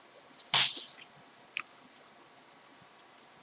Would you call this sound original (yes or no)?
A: yes